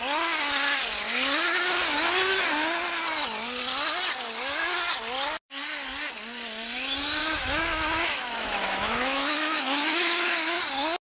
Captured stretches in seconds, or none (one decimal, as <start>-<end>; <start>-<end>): 0.0-7.2; 10.6-11.1